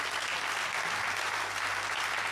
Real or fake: real